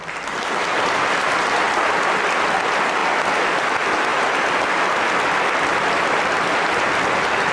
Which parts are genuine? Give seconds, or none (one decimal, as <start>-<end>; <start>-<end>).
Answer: 0.0-7.5